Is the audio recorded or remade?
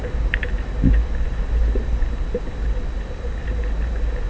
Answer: recorded